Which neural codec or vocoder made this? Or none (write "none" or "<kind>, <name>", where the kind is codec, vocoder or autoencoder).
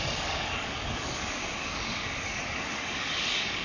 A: codec, DAC